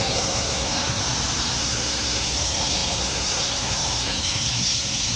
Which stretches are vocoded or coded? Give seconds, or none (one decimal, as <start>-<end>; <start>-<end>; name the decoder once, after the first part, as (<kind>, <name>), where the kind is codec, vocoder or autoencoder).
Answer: 0.0-1.0 (codec, SNAC); 1.6-5.2